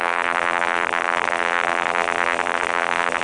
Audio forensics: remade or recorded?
remade